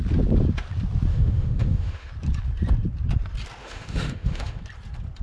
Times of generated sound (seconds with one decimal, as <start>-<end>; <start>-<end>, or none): 1.1-2.1; 3.6-4.6